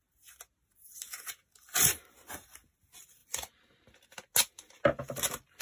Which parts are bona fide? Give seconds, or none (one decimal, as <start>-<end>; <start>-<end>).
0.0-5.6

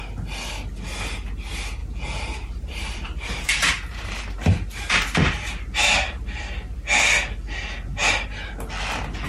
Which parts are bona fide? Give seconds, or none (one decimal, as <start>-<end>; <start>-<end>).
0.0-1.8; 6.4-9.3

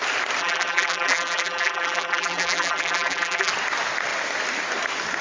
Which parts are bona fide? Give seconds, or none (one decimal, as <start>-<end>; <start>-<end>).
0.0-0.4; 3.5-5.2

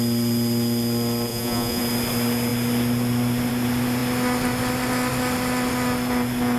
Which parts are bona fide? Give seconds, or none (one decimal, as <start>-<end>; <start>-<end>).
0.0-1.3; 1.8-6.6